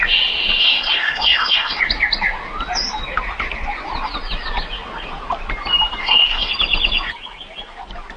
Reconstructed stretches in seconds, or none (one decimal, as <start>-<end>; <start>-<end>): 0.6-1.8; 6.0-6.5